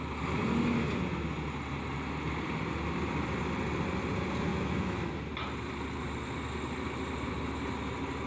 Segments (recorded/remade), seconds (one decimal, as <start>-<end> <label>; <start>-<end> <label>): 0.0-4.5 recorded; 4.5-5.1 remade; 5.1-8.3 recorded